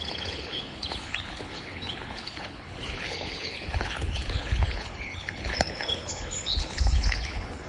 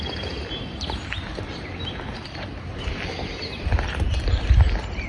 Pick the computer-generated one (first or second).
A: first